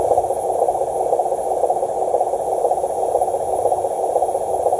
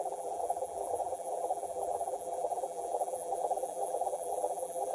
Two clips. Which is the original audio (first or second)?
first